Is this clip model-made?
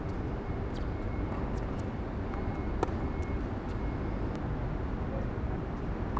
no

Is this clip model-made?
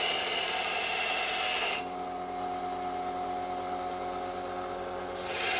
no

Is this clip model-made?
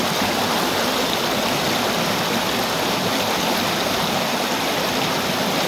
no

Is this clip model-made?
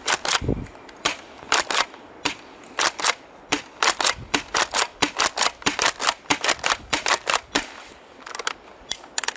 no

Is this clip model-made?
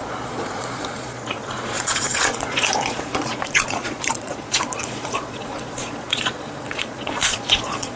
yes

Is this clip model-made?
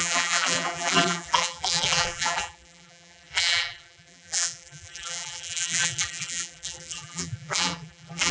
yes